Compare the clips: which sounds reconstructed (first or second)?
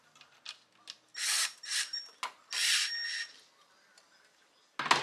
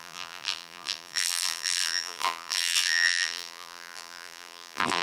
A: second